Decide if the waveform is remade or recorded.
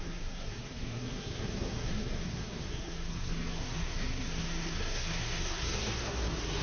remade